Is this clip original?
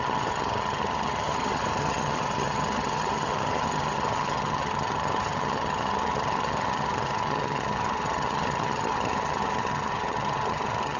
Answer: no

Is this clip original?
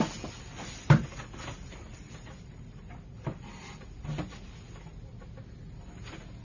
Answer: yes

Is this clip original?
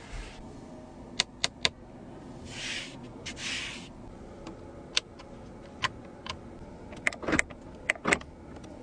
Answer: yes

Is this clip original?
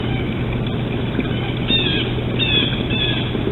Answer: yes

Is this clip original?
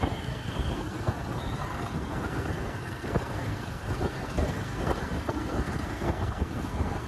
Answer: no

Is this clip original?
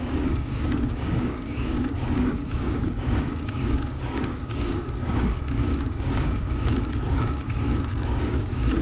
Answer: no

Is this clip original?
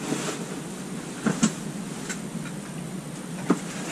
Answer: yes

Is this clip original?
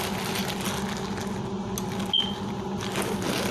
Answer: yes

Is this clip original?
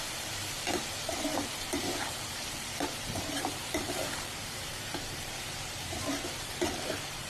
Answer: no